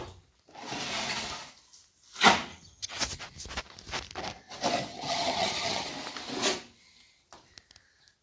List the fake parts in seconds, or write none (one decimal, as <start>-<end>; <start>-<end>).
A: 2.5-3.0; 4.9-5.9